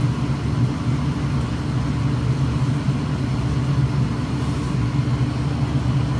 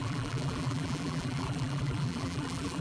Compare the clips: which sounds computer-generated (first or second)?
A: second